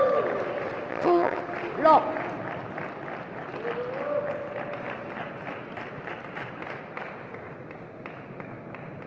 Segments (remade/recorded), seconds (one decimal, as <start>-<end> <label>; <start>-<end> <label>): 0.0-0.9 recorded; 0.9-1.4 remade; 1.4-9.1 recorded